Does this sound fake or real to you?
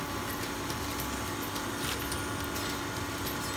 real